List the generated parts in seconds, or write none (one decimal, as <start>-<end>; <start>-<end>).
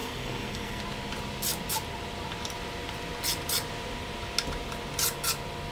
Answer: 0.0-0.8